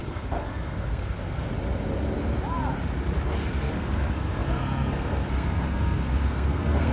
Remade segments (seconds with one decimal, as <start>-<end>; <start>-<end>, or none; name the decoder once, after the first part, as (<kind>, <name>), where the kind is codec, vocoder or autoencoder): 0.0-1.5 (codec, SNAC); 3.5-6.9